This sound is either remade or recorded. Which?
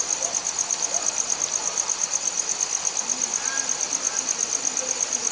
recorded